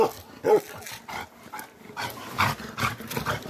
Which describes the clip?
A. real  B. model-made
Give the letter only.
A